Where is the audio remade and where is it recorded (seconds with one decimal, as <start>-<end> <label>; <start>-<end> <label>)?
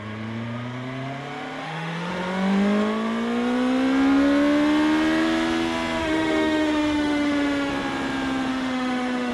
0.0-1.6 recorded; 1.6-2.1 remade; 2.1-6.0 recorded; 6.0-7.7 remade; 7.7-8.5 recorded; 8.5-9.3 remade